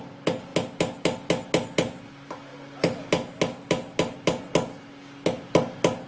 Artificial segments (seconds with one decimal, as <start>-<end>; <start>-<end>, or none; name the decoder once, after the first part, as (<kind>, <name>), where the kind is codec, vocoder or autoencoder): none